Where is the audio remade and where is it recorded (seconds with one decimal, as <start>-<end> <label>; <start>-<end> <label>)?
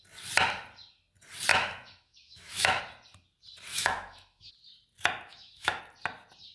0.0-1.5 recorded; 1.5-2.8 remade; 2.8-3.7 recorded; 3.7-4.5 remade; 4.5-5.3 recorded; 5.3-5.8 remade; 5.8-6.5 recorded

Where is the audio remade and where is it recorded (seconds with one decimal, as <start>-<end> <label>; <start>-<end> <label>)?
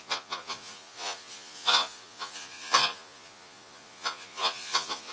0.0-5.1 remade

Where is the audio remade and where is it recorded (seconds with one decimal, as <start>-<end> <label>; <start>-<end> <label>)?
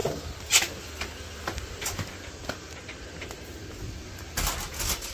0.0-0.8 recorded; 0.8-3.6 remade; 3.6-5.1 recorded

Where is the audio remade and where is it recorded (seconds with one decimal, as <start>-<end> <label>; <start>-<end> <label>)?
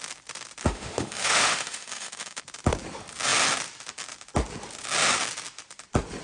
0.0-0.6 recorded; 0.6-2.4 remade; 2.4-6.2 recorded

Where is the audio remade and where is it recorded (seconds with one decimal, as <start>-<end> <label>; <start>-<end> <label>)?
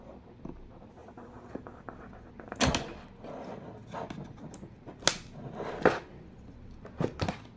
0.0-7.6 recorded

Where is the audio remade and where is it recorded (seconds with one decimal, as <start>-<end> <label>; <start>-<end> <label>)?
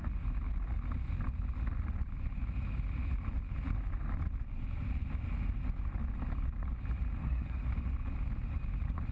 0.0-7.2 recorded; 7.2-7.7 remade; 7.7-9.1 recorded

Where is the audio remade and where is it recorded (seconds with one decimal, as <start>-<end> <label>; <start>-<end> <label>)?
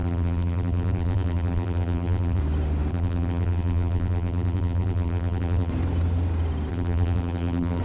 0.0-2.4 remade; 2.4-2.9 recorded; 2.9-5.7 remade; 5.7-6.7 recorded; 6.7-7.8 remade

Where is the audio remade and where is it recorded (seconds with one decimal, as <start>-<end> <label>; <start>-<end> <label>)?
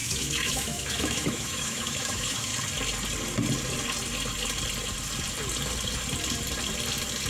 0.0-2.5 remade; 2.5-7.3 recorded